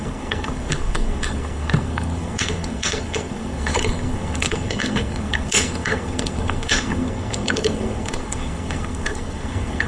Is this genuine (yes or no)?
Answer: no